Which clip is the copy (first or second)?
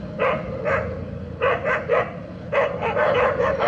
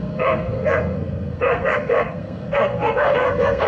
second